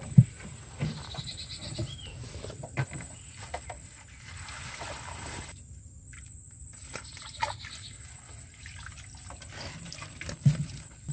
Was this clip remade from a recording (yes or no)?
no